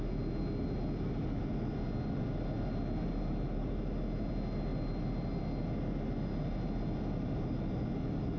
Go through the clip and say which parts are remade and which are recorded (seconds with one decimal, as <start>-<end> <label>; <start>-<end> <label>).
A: 0.0-8.4 recorded